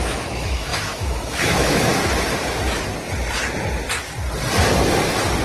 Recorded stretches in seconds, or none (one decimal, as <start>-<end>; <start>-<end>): 1.9-5.4